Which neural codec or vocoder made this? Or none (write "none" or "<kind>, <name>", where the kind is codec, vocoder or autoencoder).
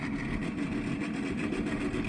none